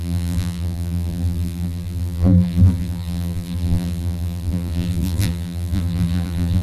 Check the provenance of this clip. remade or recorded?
remade